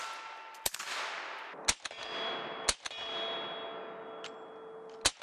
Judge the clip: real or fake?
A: real